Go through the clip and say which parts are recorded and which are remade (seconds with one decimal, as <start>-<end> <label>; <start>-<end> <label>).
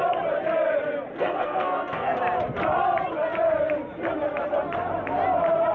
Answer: 0.0-1.1 recorded; 1.1-2.2 remade; 2.2-5.7 recorded